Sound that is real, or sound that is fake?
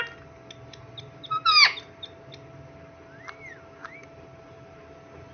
real